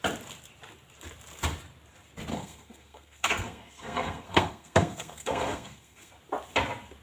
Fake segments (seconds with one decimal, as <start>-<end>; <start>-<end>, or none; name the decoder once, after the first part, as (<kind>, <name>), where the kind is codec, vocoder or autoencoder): 2.3-6.1 (codec, SNAC)